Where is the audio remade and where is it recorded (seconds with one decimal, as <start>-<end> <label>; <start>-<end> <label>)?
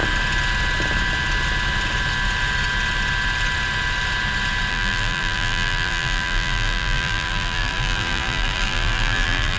0.0-4.7 recorded; 4.7-9.6 remade